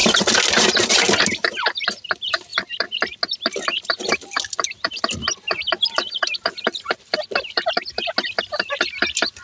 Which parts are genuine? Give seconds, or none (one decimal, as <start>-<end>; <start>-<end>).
0.0-9.4